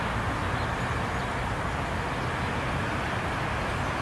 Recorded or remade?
recorded